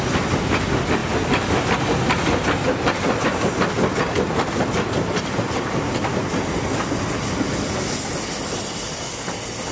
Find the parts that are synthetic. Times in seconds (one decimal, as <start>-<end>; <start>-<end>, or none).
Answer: none